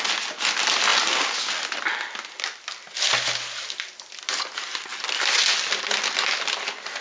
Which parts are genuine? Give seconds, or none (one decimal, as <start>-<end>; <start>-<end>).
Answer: 0.0-7.0